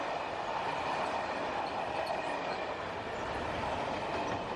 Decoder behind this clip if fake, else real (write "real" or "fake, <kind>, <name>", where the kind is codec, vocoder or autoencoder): real